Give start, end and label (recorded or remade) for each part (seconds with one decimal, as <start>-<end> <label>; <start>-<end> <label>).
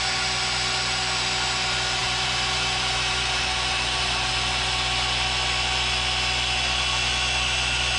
0.0-2.0 recorded; 2.0-4.3 remade; 4.3-8.0 recorded